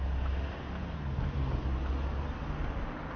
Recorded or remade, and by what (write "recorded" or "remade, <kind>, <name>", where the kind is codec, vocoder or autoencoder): recorded